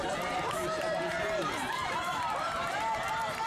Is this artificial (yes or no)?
yes